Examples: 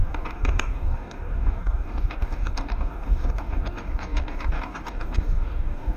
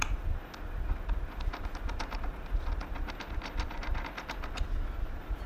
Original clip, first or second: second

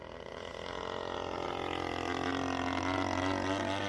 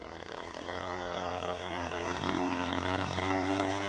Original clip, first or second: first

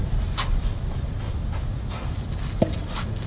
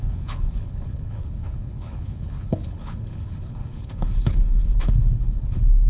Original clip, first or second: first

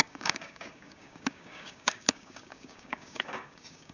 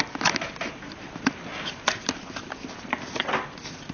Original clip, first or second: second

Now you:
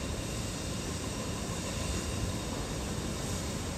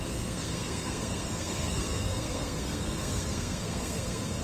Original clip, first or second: first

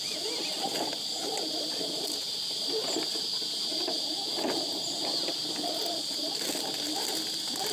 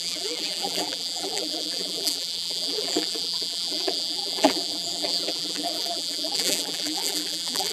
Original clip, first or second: first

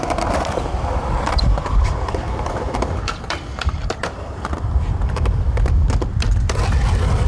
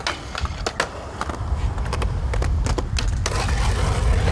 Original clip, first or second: second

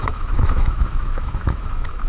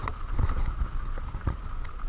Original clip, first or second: second